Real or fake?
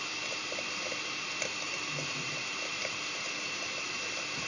fake